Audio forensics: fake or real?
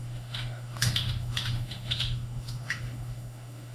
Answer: fake